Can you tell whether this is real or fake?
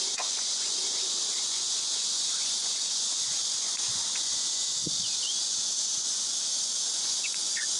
fake